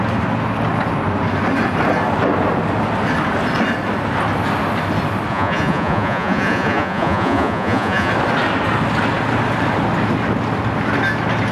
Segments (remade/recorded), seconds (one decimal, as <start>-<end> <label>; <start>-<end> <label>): 0.0-5.3 recorded; 5.3-8.1 remade; 8.1-11.5 recorded